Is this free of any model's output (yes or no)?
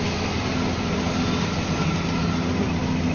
yes